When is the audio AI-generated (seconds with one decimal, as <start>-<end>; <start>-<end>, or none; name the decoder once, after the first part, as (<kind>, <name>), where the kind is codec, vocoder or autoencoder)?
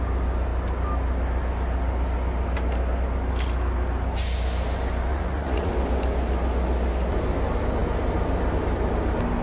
5.1-5.7 (vocoder, Vocos)